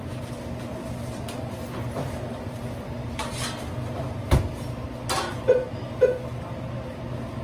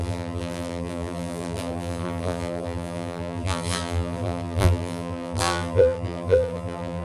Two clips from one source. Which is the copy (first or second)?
second